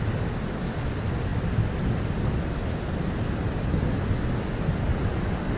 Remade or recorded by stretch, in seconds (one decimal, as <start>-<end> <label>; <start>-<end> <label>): 0.0-5.6 recorded